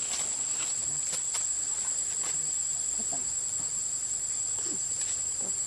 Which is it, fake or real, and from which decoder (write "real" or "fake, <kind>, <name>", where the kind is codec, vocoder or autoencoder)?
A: real